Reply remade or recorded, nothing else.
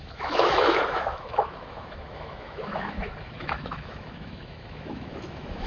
remade